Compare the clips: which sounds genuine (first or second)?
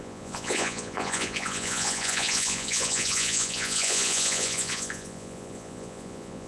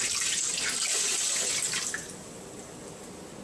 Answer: second